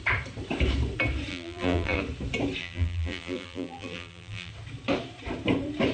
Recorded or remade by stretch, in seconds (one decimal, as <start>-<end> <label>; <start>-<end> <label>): 0.0-1.3 recorded; 1.3-2.0 remade; 2.0-2.6 recorded; 2.6-4.5 remade; 4.5-5.9 recorded